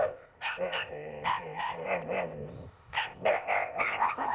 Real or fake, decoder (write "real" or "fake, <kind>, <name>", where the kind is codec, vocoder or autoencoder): fake, codec, ZipCodec